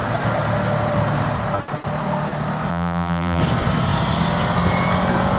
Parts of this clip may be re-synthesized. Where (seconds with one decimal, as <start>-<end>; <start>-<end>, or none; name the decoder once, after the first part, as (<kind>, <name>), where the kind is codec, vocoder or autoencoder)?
2.7-3.4 (vocoder, BigVGAN v2)